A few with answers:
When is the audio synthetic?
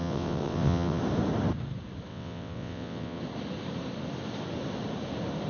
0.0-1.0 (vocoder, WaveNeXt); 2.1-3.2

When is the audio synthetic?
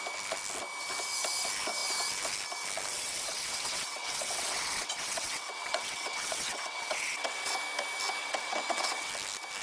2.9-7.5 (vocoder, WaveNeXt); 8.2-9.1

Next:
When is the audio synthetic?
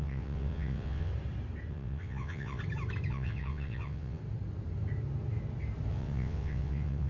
0.0-1.1 (vocoder, WaveNeXt); 1.7-2.6; 3.1-4.2; 5.9-7.1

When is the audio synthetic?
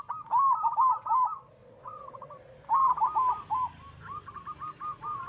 1.6-2.3 (vocoder, WaveNeXt)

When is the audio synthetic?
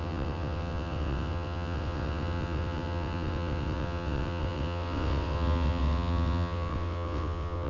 0.0-7.7 (vocoder, WaveNeXt)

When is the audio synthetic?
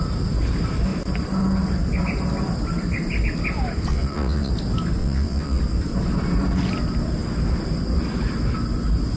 3.9-4.5 (vocoder, WaveNeXt); 5.0-5.6